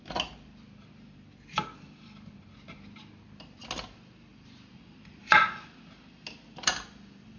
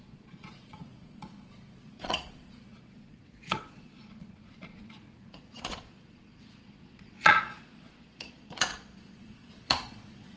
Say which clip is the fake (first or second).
second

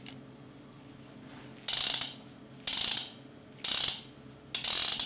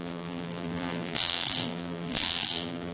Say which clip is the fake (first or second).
second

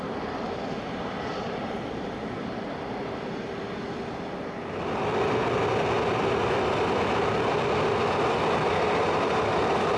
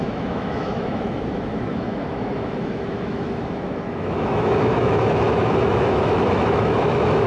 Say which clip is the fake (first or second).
second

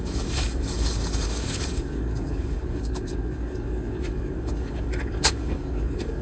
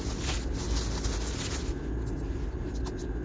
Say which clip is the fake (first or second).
first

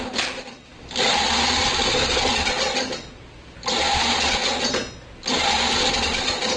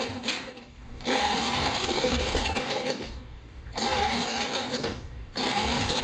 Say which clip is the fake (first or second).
second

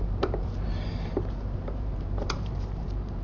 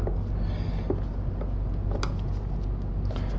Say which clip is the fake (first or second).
first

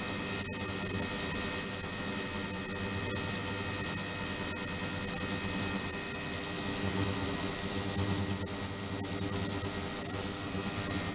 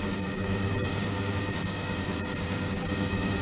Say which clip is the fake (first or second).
second